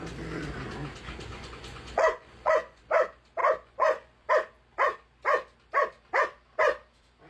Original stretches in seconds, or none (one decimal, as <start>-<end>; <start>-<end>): 0.0-1.3; 2.8-3.4; 4.3-7.3